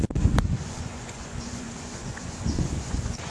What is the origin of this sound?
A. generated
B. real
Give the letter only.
A